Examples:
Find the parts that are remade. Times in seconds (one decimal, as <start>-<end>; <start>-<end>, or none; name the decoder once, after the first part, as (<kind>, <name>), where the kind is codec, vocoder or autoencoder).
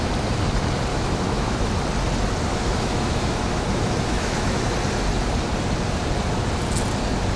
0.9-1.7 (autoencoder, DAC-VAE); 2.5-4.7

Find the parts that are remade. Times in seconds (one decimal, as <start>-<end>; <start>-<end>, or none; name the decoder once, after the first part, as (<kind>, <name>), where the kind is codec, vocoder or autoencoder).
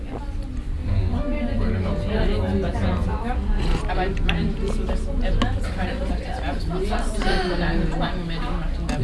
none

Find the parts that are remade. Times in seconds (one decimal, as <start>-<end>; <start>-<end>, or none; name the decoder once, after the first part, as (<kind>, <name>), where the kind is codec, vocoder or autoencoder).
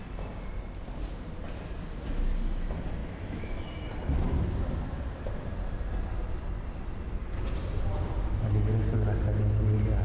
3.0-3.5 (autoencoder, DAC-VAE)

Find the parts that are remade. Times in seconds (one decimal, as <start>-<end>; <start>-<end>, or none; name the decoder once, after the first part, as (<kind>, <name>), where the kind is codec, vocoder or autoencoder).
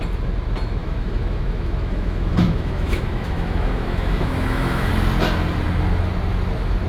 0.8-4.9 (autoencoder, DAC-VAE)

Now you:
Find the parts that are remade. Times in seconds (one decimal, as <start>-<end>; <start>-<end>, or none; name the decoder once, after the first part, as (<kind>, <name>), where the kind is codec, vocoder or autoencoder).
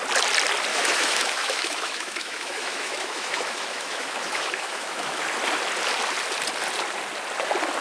0.7-5.2 (autoencoder, DAC-VAE)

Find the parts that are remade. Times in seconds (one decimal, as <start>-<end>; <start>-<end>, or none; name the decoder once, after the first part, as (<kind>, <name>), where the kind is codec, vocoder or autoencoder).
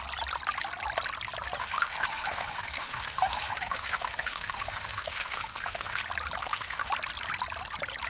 1.6-6.0 (autoencoder, DAC-VAE); 6.4-6.9